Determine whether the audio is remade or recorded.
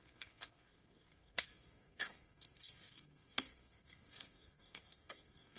remade